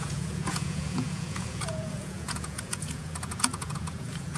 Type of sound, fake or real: fake